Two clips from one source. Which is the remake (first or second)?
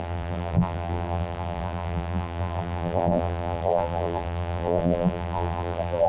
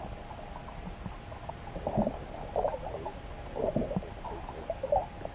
first